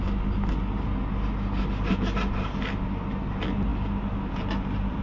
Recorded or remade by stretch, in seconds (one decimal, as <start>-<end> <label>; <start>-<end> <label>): 0.0-5.0 recorded